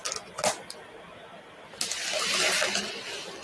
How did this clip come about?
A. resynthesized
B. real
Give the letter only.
B